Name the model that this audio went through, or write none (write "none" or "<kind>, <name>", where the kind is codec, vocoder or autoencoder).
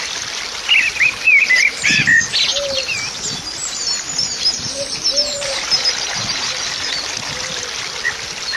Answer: none